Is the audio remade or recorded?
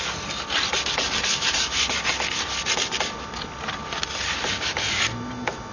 recorded